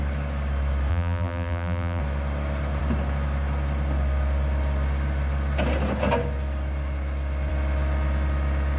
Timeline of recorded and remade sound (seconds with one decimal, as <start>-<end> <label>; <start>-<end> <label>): 0.0-0.9 recorded; 0.9-2.0 remade; 2.0-8.8 recorded

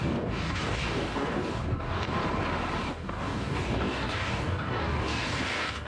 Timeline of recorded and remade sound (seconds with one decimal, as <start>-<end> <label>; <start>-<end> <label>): 0.0-2.2 remade; 2.2-2.9 recorded; 2.9-5.9 remade

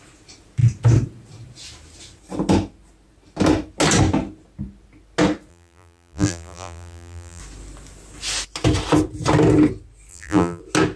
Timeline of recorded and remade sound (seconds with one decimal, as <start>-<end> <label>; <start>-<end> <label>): 0.0-5.5 recorded; 5.5-7.4 remade; 7.4-10.1 recorded; 10.1-10.6 remade; 10.6-11.0 recorded